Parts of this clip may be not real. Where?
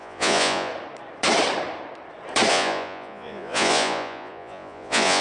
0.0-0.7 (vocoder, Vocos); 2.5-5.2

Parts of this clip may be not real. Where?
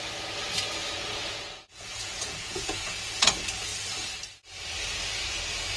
0.8-3.3 (vocoder, Vocos)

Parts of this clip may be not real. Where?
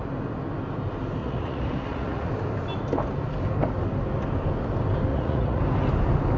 1.2-2.3 (vocoder, Vocos); 5.1-5.6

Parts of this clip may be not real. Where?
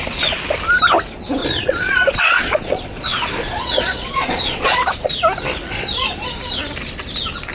1.4-5.1 (vocoder, Vocos)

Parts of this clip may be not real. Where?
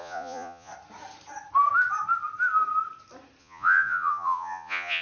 0.0-0.7 (vocoder, Vocos); 3.4-5.0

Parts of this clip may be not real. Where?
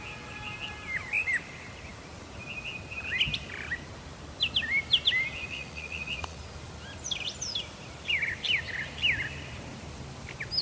5.5-6.4 (vocoder, Vocos)